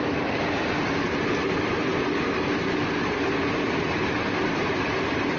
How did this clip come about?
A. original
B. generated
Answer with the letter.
B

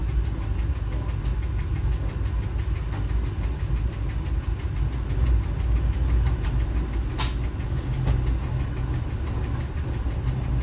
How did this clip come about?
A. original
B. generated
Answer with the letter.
A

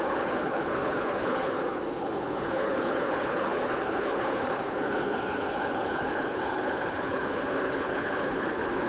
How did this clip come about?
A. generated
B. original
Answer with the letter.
A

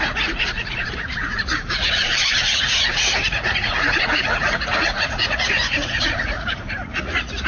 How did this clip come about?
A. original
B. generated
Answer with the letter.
B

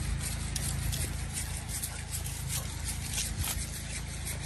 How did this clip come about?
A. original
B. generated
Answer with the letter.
A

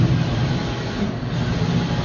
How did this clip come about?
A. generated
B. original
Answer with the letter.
B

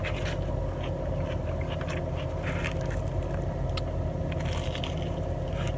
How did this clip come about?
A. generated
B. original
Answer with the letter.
B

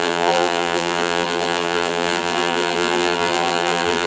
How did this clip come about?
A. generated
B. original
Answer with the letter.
A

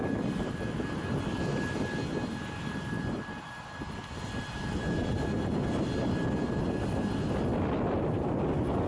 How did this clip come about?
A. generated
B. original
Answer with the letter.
B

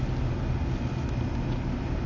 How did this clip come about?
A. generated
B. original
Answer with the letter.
B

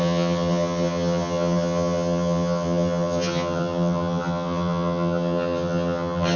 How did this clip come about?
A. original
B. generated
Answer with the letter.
B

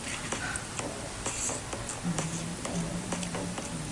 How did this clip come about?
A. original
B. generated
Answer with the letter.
A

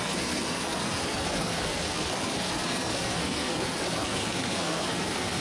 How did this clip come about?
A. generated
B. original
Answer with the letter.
A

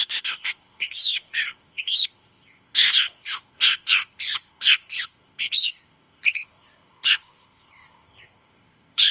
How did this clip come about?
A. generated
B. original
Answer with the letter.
A